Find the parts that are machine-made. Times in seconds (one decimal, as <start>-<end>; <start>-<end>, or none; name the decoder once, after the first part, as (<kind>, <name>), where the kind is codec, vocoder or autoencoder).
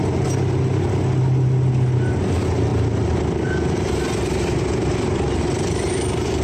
none